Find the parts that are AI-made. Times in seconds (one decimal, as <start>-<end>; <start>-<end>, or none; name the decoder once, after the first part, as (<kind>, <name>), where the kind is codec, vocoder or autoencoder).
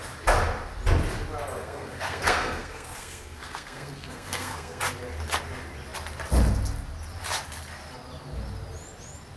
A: 1.6-4.8 (codec, SNAC)